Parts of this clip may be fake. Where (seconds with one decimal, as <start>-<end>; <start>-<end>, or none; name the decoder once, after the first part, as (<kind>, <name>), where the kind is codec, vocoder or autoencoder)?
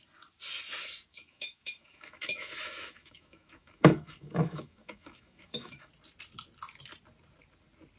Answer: 1.1-5.9 (autoencoder, DAC-VAE)